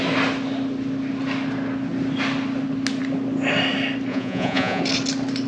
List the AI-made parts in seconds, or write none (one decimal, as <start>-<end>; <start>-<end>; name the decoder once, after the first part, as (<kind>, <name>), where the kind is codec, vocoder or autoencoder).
4.1-4.8 (vocoder, Vocos)